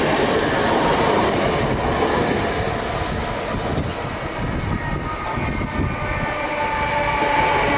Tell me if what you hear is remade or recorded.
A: recorded